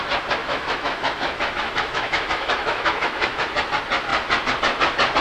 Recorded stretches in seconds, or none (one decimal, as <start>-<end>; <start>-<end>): 0.0-0.4; 3.5-5.2

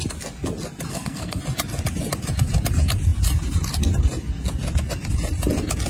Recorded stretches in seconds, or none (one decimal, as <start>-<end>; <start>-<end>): 0.0-0.9; 1.4-5.9

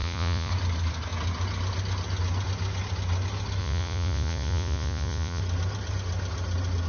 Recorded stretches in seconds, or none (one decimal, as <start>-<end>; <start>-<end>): 0.5-3.6; 5.4-6.9

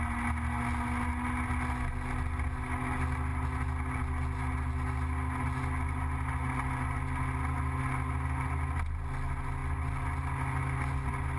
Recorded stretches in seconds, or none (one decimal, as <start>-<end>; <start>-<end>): 0.0-11.4

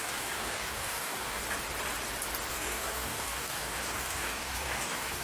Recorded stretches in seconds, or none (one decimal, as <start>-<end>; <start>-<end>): 1.4-2.5

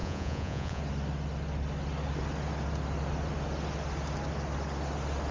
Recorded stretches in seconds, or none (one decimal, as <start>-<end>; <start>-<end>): 0.8-5.3

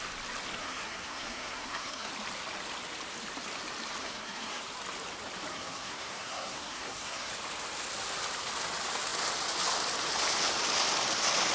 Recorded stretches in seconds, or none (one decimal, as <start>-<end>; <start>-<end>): 0.0-0.6; 2.1-4.0; 4.6-5.5; 7.3-11.5